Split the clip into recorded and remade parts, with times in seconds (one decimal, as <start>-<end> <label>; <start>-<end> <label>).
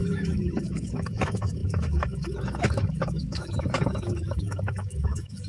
0.0-5.5 remade